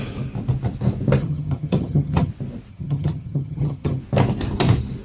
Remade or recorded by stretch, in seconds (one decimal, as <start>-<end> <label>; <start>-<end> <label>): 0.0-1.2 recorded; 1.2-2.3 remade; 2.3-2.7 recorded; 2.7-4.0 remade; 4.0-5.0 recorded